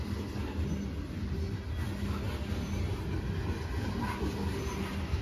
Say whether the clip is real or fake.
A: real